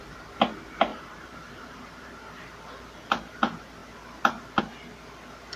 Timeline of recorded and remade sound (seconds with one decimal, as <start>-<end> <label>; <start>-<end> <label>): 0.0-0.9 recorded; 0.9-2.4 remade; 2.4-5.6 recorded

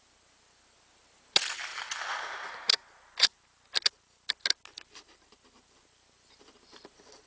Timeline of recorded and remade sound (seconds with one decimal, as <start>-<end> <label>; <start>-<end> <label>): 0.0-7.3 recorded

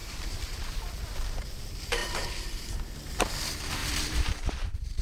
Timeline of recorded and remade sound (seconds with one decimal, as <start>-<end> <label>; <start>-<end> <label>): 0.0-0.8 remade; 0.8-3.8 recorded; 3.8-5.0 remade

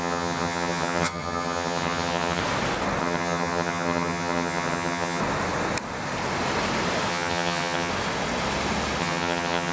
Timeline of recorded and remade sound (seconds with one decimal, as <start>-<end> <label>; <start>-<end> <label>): 0.0-2.4 remade; 2.4-3.0 recorded; 3.0-5.2 remade; 5.2-7.1 recorded; 7.1-7.9 remade; 7.9-9.0 recorded; 9.0-9.7 remade

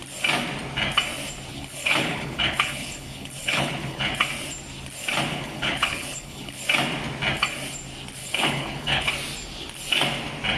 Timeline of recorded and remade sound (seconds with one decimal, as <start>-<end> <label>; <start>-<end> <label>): 0.0-1.5 recorded; 1.5-4.1 remade; 4.1-5.3 recorded; 5.3-6.6 remade; 6.6-8.2 recorded; 8.2-9.1 remade; 9.1-10.6 recorded

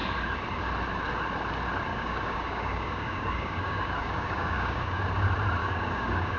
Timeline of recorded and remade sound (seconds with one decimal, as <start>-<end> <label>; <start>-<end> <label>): 0.0-1.9 recorded; 1.9-5.0 remade; 5.0-5.6 recorded; 5.6-6.4 remade

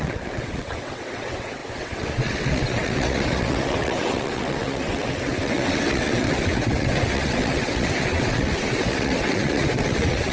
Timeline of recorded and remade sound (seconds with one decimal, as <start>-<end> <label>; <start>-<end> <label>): 0.0-10.3 remade